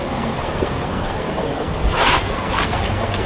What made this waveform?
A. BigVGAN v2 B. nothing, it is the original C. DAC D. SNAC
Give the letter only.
D